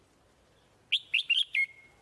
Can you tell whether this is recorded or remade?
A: recorded